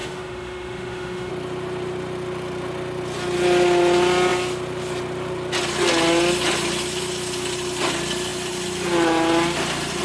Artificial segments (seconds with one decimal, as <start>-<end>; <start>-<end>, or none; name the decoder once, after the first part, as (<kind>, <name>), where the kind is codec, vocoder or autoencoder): 0.0-1.3 (autoencoder, DAC-VAE)

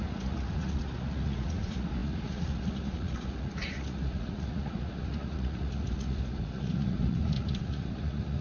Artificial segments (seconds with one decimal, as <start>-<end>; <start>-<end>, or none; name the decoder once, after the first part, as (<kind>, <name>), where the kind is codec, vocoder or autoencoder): 0.0-8.4 (vocoder, Vocos)

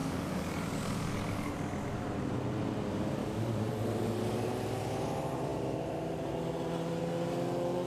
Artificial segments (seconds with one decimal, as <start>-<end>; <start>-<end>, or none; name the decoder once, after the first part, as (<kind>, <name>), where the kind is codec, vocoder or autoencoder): 0.0-1.5 (codec, DAC); 3.2-3.7

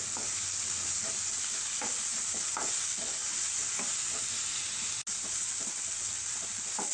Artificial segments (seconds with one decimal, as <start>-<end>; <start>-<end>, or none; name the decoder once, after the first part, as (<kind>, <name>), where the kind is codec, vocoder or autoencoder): none

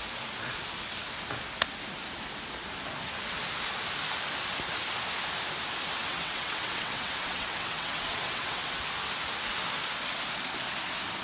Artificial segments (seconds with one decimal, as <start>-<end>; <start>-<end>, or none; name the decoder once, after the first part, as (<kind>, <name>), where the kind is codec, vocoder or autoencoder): 6.0-8.8 (vocoder, WaveNeXt)